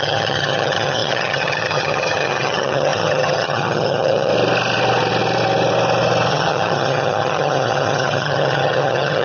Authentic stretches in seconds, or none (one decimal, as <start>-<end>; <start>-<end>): 4.3-6.3